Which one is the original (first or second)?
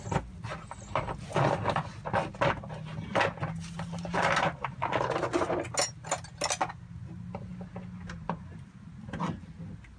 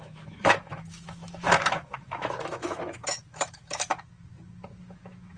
first